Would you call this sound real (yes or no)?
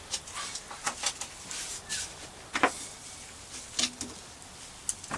yes